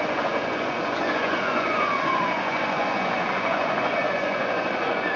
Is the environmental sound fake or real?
fake